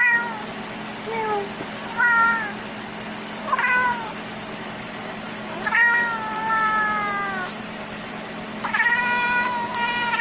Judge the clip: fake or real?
real